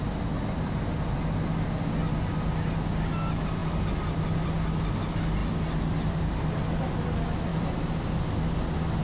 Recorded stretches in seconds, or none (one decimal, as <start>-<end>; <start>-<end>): 0.0-9.0